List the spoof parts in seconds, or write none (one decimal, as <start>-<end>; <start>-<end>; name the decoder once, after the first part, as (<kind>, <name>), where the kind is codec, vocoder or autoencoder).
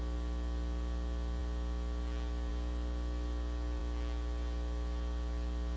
none